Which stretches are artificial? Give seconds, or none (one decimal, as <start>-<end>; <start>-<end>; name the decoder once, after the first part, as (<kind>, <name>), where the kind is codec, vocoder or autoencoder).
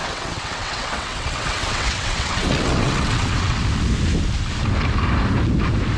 0.0-3.6 (vocoder, WaveNeXt)